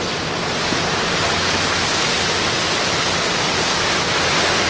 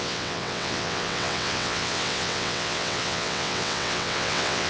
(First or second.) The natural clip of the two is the first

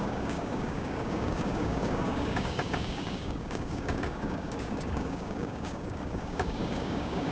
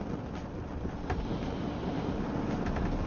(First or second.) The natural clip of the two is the second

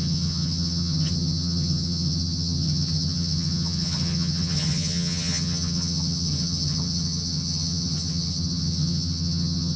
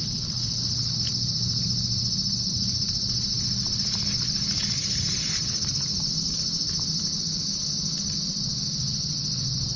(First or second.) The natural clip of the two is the second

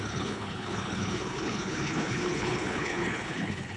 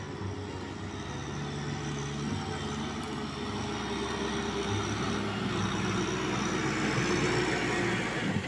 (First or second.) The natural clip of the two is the second